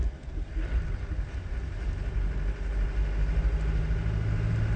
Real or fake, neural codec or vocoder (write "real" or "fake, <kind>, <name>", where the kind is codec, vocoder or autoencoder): real